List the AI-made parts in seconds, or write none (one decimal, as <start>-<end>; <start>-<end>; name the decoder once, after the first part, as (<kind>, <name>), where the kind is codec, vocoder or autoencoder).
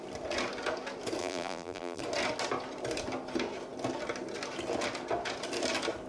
1.2-2.0 (vocoder, BigVGAN v2)